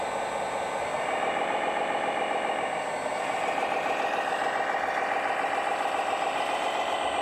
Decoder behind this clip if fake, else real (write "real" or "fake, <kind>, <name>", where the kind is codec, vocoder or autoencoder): real